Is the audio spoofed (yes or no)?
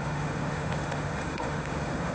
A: yes